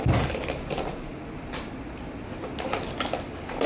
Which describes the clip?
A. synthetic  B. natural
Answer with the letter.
B